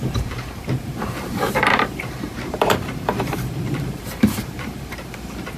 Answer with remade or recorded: remade